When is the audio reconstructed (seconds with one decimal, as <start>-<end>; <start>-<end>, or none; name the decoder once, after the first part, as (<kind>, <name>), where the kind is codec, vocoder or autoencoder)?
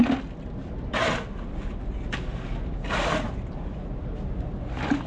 none